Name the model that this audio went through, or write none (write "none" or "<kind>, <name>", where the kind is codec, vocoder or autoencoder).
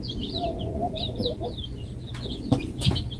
vocoder, Vocos